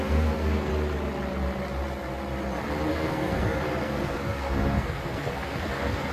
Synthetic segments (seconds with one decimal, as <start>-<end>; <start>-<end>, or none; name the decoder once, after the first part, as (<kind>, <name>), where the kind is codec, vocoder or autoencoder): 0.0-0.7 (codec, SNAC); 2.9-6.1

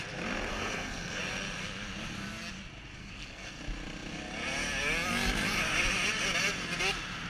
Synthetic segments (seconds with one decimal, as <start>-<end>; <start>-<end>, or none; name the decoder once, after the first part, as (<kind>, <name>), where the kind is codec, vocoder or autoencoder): 0.5-1.2 (codec, SNAC); 3.0-3.6